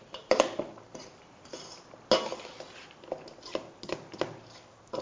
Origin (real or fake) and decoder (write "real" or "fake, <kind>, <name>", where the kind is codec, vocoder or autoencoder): real